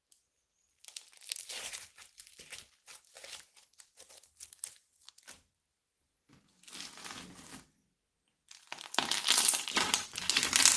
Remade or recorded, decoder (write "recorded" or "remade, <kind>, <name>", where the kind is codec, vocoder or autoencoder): recorded